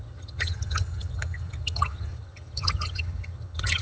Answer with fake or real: fake